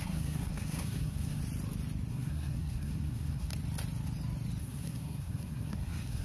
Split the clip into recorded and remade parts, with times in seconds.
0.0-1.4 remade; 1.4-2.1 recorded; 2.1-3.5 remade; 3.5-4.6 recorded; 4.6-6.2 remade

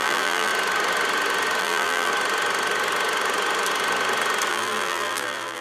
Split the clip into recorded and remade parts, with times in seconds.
0.0-0.5 remade; 0.5-1.6 recorded; 1.6-2.1 remade; 2.1-4.5 recorded; 4.5-5.6 remade

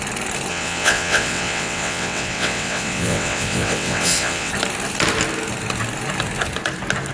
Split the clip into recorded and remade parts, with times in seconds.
0.0-0.5 recorded; 0.5-4.5 remade; 4.5-7.1 recorded